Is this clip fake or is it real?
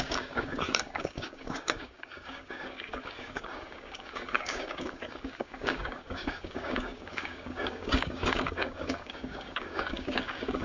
fake